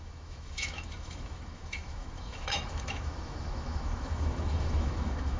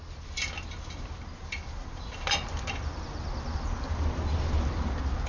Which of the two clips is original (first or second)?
second